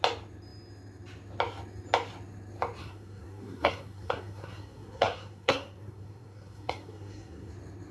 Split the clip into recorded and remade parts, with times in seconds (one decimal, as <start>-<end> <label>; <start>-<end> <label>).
0.0-2.8 recorded; 2.8-7.5 remade; 7.5-7.9 recorded